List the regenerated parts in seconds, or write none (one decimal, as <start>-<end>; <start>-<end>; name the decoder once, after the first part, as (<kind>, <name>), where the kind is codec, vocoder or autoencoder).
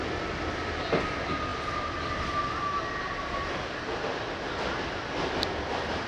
none